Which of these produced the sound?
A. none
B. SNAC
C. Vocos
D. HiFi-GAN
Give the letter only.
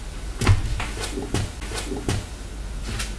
A